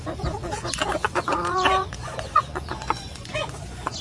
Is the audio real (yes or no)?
no